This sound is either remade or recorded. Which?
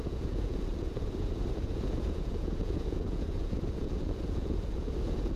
remade